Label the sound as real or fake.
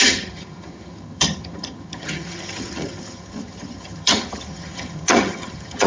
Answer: fake